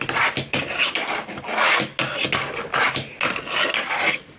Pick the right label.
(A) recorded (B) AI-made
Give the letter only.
A